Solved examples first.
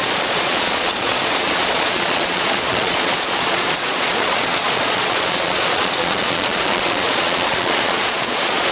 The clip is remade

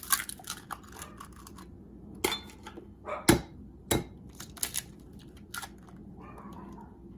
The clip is recorded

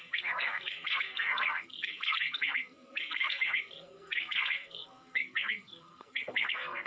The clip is remade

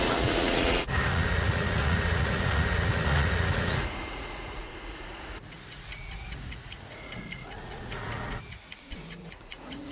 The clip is remade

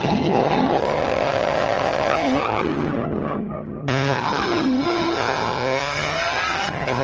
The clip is remade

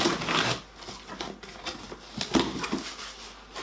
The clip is recorded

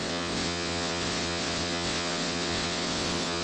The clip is remade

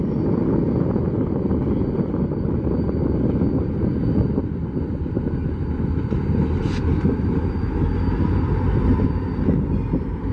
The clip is recorded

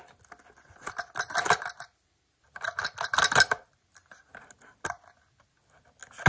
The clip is recorded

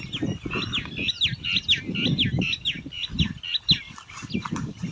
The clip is recorded